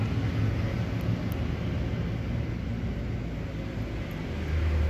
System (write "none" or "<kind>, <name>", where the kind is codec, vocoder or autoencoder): none